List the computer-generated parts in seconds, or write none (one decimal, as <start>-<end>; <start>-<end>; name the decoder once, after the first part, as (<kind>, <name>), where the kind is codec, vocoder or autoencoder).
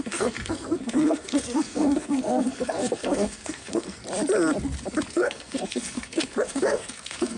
0.0-4.0 (codec, SNAC); 5.1-7.4